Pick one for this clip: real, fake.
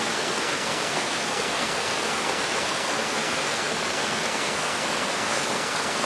fake